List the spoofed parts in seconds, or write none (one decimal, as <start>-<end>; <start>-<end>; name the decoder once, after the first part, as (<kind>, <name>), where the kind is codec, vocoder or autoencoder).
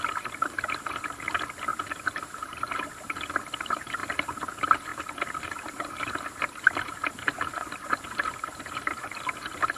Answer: 0.0-4.0 (vocoder, BigVGAN v2); 4.5-9.8